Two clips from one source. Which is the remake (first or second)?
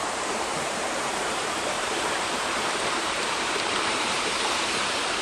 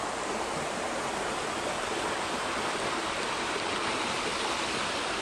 first